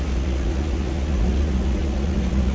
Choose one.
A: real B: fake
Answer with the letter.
B